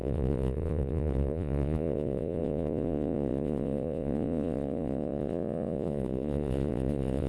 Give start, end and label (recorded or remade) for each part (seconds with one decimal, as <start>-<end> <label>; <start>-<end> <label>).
0.0-7.3 remade